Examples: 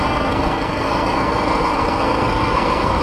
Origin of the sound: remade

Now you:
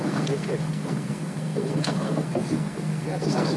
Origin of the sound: remade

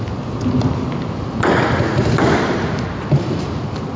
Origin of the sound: recorded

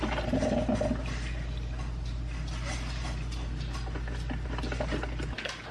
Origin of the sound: recorded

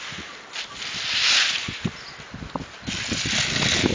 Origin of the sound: recorded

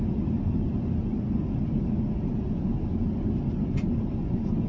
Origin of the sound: recorded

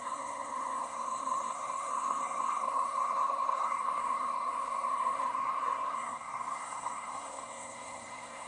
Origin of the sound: remade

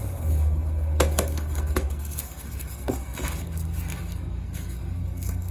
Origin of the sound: remade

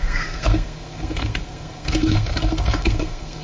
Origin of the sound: remade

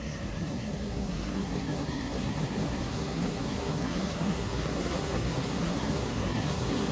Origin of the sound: remade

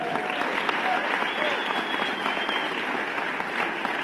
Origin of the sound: recorded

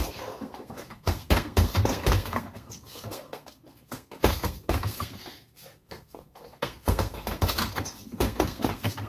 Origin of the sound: remade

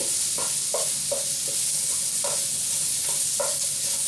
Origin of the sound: recorded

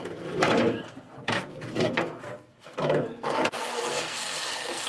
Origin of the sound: remade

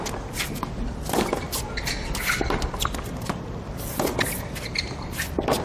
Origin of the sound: recorded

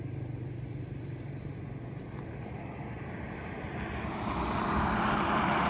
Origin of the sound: recorded